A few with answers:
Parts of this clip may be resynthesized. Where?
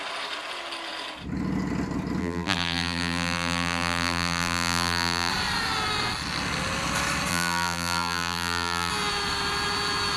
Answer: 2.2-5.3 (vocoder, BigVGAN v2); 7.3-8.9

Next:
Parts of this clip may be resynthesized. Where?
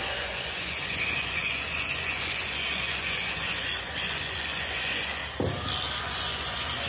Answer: 0.0-5.2 (vocoder, Vocos); 6.0-6.9